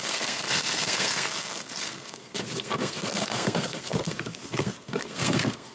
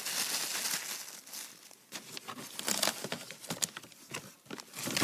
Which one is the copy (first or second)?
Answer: first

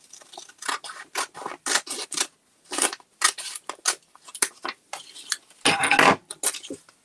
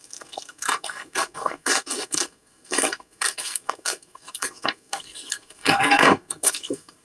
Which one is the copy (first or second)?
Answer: second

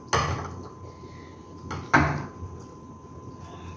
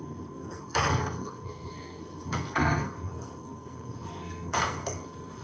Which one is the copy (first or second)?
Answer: second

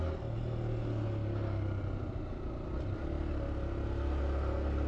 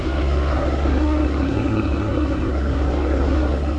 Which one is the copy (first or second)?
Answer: second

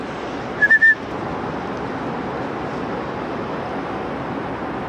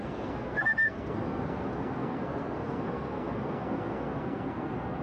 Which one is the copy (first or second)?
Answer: second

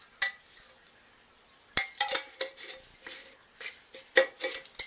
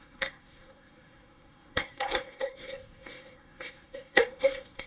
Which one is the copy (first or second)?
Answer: second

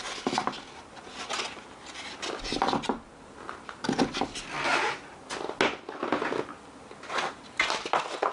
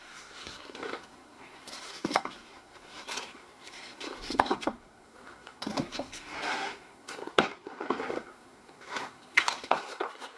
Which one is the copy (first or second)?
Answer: second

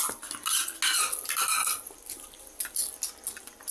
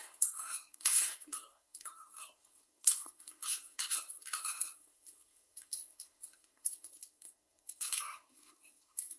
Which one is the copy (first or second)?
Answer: second